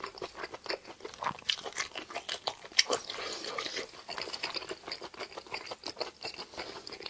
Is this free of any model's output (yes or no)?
yes